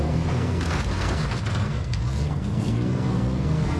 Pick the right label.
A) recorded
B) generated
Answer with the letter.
B